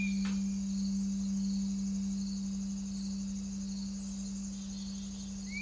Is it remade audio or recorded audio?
recorded